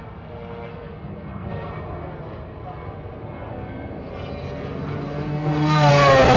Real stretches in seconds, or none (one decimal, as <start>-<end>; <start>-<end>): 0.0-0.7; 1.7-3.5; 4.1-5.3; 5.9-6.4